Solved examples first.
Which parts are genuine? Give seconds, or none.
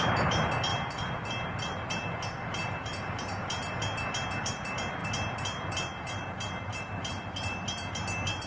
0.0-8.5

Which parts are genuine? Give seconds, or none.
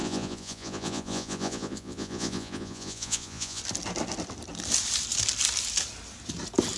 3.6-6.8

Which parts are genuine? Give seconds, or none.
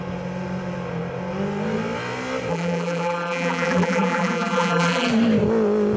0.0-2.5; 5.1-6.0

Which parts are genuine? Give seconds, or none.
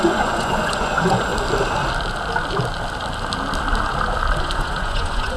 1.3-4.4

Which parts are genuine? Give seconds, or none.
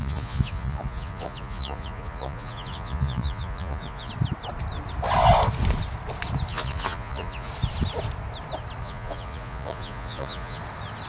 4.1-6.5; 7.5-8.8; 10.6-11.1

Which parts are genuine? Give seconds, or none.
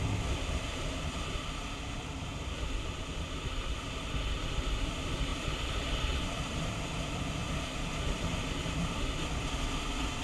0.0-5.3; 6.9-10.2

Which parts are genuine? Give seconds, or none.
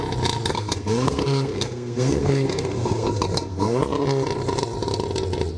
0.0-0.5; 3.8-5.6